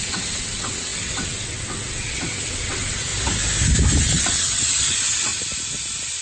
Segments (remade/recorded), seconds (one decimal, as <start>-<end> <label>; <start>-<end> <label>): 0.0-3.1 remade; 3.1-4.0 recorded; 4.0-5.3 remade; 5.3-6.2 recorded